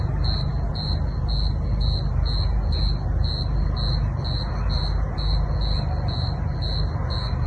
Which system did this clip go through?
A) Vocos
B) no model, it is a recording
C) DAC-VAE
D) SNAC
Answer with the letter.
B